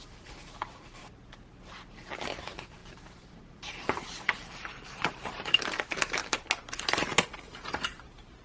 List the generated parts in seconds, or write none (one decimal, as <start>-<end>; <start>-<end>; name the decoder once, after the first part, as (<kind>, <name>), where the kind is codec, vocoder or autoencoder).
0.0-1.0 (vocoder, BigVGAN v2); 2.4-6.2; 7.4-8.4

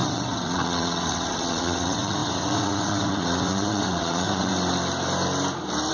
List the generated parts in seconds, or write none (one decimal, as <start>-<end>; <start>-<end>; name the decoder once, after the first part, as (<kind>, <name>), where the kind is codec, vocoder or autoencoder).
0.0-4.5 (vocoder, WaveNeXt)

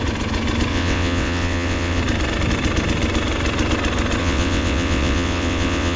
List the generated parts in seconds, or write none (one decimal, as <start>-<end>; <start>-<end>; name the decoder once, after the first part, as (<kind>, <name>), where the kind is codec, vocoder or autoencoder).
0.7-2.0 (vocoder, WaveNeXt); 4.2-6.0

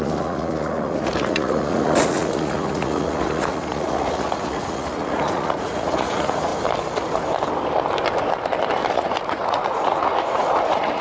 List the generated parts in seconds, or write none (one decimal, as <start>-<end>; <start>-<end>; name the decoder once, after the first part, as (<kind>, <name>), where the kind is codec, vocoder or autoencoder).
0.0-6.5 (vocoder, Vocos); 8.9-11.0

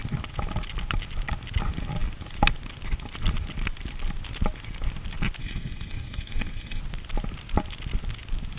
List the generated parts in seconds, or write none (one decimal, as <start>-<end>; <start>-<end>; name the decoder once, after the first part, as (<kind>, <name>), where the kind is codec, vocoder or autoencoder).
5.4-6.8 (codec, SNAC)